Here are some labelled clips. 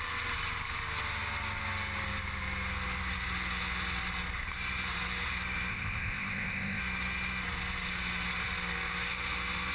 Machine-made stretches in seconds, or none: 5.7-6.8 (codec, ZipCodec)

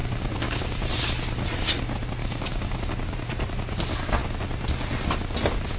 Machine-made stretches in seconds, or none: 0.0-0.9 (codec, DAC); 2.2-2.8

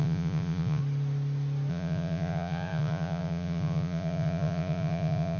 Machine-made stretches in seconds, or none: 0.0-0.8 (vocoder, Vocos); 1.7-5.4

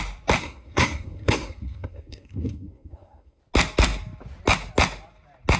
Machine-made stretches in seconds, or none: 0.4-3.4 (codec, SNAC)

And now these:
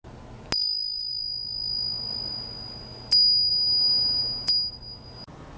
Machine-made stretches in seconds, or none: 3.5-4.2 (vocoder, BigVGAN v2)